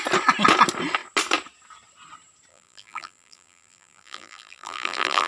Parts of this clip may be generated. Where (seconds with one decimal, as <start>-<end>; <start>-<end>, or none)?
2.5-5.3